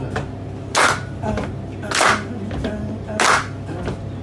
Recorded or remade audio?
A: recorded